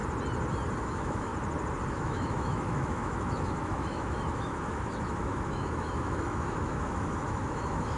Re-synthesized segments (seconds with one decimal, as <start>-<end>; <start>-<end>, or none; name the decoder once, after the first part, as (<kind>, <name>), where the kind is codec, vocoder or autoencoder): 0.8-1.3 (autoencoder, DAC-VAE); 1.9-8.0